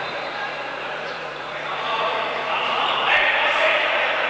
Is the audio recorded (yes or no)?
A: no